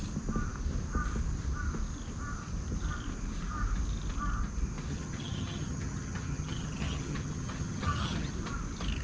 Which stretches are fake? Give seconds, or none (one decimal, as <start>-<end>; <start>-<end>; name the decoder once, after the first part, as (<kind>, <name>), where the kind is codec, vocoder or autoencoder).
4.9-8.3 (vocoder, HiFi-GAN)